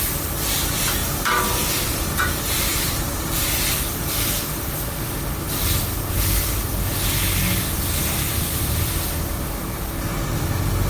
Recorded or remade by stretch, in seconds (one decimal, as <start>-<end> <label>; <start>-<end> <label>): 0.0-1.0 recorded; 1.0-2.3 remade; 2.3-2.7 recorded; 2.7-6.7 remade; 6.7-10.9 recorded